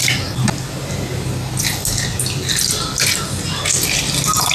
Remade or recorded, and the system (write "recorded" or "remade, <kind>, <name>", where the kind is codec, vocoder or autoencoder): recorded